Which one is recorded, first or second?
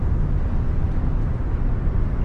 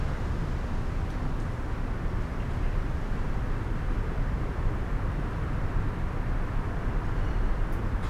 first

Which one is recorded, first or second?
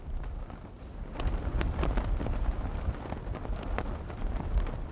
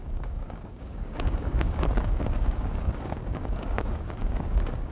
first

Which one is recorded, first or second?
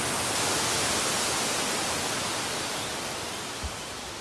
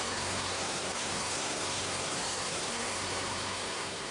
first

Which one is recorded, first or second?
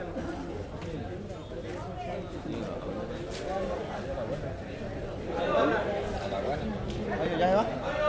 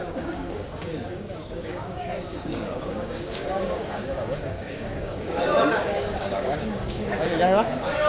first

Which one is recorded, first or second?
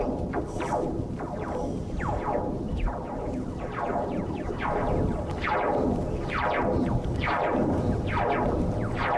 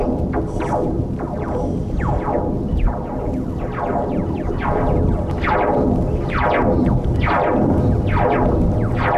second